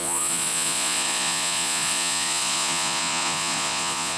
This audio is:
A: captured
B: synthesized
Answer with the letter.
B